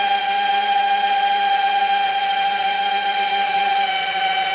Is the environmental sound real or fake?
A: fake